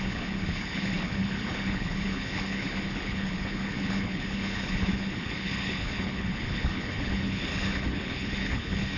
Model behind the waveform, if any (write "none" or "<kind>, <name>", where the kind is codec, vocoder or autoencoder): codec, HILCodec